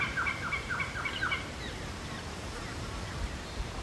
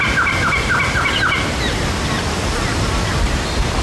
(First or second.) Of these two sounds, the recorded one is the second